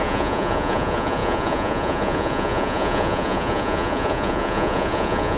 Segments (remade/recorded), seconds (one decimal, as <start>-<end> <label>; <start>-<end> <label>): 0.0-5.4 remade